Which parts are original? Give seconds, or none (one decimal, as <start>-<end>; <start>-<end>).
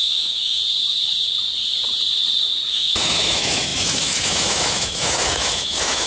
0.6-2.7